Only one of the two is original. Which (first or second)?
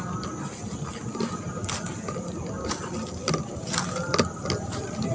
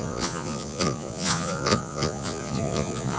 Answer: first